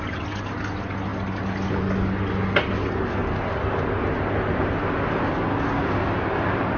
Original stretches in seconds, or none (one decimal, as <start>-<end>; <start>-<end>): 0.0-6.8